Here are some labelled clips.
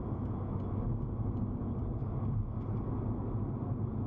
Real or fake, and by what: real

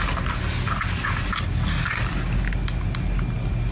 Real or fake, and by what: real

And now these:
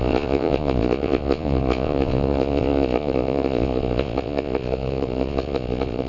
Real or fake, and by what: fake, vocoder, Vocos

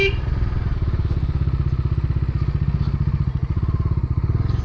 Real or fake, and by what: real